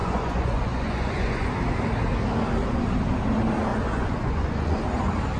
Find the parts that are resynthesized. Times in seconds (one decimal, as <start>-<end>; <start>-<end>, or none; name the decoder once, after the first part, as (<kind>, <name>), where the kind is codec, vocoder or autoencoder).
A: 0.0-1.5 (vocoder, Vocos); 3.7-4.8